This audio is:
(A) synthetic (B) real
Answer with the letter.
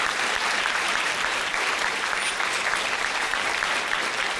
A